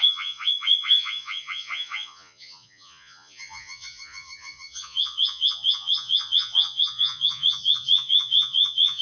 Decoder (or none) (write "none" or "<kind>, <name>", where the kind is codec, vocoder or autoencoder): vocoder, Vocos